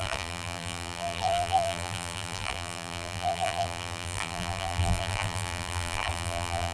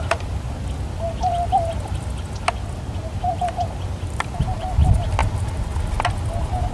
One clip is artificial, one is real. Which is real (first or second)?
second